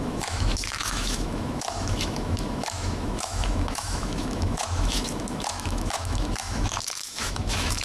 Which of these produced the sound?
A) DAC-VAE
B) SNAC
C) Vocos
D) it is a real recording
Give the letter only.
A